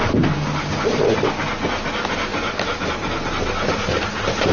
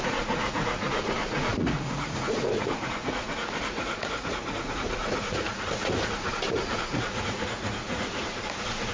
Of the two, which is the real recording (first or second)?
first